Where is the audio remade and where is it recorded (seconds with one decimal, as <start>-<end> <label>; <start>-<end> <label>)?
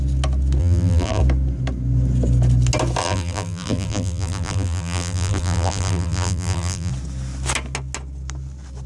0.0-0.6 recorded; 0.6-1.2 remade; 1.2-3.0 recorded; 3.0-6.9 remade; 6.9-8.9 recorded